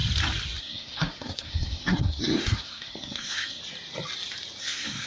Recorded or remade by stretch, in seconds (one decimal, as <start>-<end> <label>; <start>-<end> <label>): 0.0-0.6 recorded; 0.6-3.6 remade; 3.6-4.6 recorded; 4.6-5.1 remade

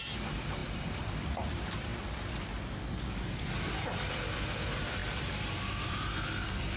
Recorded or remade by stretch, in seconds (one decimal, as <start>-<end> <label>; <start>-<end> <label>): 0.0-1.9 remade; 1.9-3.4 recorded; 3.4-6.8 remade

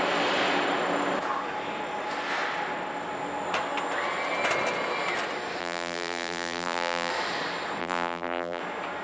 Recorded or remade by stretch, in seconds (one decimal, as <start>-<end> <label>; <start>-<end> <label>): 0.0-5.6 recorded; 5.6-7.1 remade; 7.1-7.8 recorded; 7.8-8.6 remade; 8.6-9.0 recorded

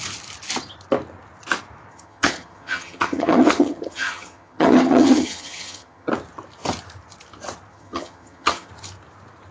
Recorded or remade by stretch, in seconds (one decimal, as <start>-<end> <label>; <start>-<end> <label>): 0.0-1.9 recorded; 1.9-6.1 remade; 6.1-7.7 recorded; 7.7-8.7 remade; 8.7-9.5 recorded

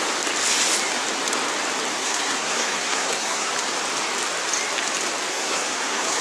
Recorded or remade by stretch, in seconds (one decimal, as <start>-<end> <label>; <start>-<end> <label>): 0.0-1.9 recorded; 1.9-3.5 remade; 3.5-5.3 recorded; 5.3-6.2 remade

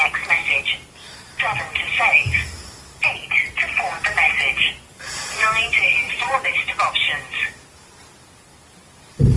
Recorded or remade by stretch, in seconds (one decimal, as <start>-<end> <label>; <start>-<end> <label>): 0.0-1.0 recorded; 1.0-2.0 remade; 2.0-4.9 recorded; 4.9-6.7 remade; 6.7-8.5 recorded; 8.5-9.4 remade

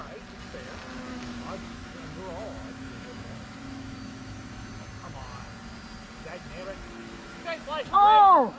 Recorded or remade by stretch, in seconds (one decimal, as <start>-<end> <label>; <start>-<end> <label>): 0.0-1.1 recorded; 1.1-4.7 remade; 4.7-7.0 recorded; 7.0-7.6 remade; 7.6-8.6 recorded